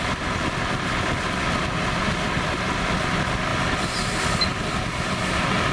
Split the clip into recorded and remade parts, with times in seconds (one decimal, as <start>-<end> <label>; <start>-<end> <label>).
0.0-5.7 recorded